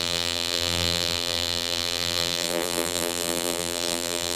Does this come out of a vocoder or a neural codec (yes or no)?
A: yes